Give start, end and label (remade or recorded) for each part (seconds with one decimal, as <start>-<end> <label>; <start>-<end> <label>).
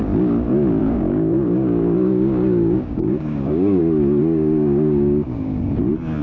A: 0.0-0.8 recorded; 0.8-3.8 remade; 3.8-4.2 recorded; 4.2-5.8 remade; 5.8-6.2 recorded